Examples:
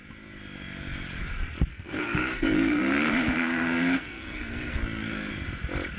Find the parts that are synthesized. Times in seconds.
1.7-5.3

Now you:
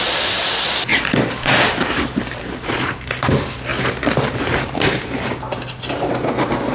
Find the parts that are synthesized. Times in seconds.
0.9-3.0

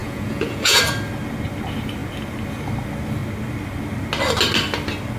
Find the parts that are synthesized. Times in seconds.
0.0-0.8

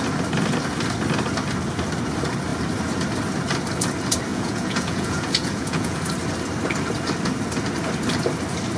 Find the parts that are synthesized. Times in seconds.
4.3-6.0

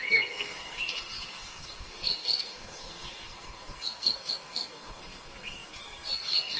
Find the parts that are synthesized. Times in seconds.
0.0-6.6

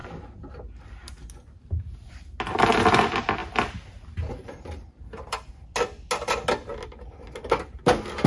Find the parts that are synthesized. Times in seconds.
3.4-5.5

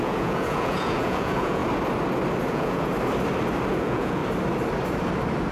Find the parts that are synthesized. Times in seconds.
0.0-1.6; 2.5-2.9; 3.7-4.2

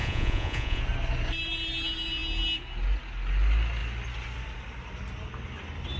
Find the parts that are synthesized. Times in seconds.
0.0-0.8